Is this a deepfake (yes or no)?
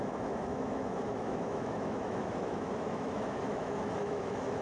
yes